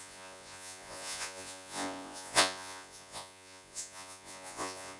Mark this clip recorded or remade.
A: remade